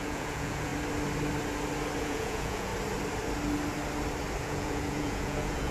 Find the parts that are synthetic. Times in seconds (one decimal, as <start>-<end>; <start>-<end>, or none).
0.0-0.7; 2.0-2.7; 4.4-5.7